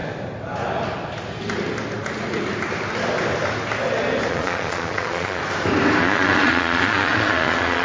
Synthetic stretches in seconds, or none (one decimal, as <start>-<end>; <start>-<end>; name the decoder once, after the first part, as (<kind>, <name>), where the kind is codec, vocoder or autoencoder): 4.3-5.4 (vocoder, Vocos); 6.0-7.8